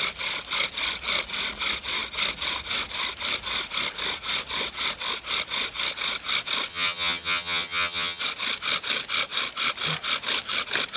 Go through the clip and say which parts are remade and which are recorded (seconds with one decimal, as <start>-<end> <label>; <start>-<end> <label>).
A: 0.0-6.7 recorded; 6.7-8.2 remade; 8.2-11.0 recorded